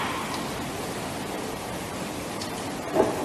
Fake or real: real